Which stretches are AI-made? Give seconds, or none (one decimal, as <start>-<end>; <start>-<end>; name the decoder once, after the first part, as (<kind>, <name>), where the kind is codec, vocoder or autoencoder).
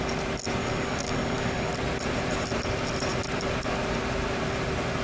0.6-1.7 (codec, DAC)